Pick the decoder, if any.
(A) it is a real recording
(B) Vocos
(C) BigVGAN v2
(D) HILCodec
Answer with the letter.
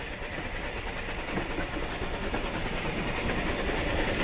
A